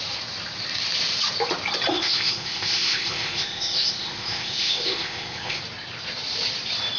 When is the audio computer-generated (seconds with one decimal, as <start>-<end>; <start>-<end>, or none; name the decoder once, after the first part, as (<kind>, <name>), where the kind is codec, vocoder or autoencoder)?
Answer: 1.9-5.6 (codec, ZipCodec)